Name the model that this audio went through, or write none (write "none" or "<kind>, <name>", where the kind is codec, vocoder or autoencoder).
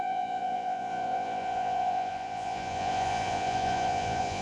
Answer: vocoder, Vocos